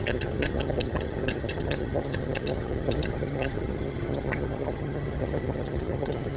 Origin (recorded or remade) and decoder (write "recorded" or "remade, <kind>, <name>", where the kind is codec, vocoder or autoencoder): remade, vocoder, HiFi-GAN